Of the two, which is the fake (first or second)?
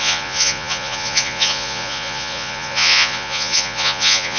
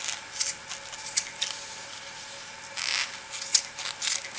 first